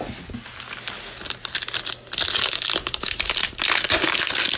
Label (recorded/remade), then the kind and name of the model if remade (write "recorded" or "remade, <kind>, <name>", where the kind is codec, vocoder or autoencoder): recorded